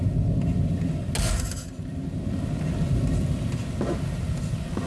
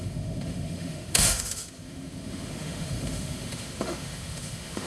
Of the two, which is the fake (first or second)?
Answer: second